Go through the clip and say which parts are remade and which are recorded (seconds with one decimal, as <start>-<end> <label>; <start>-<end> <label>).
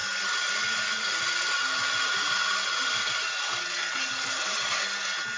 0.0-5.4 recorded